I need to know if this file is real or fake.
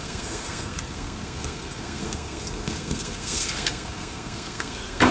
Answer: fake